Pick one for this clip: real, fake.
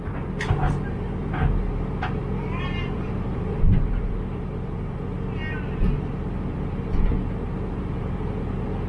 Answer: real